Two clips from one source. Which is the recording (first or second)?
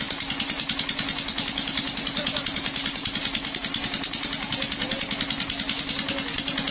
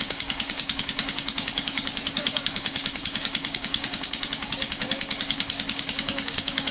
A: first